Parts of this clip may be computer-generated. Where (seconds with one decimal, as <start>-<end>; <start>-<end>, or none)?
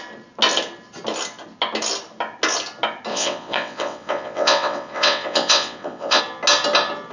3.1-6.2